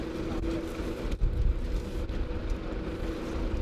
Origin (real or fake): real